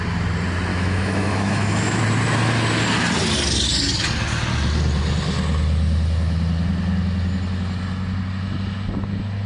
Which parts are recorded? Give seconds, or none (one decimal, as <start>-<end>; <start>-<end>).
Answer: 0.0-0.7; 2.0-9.5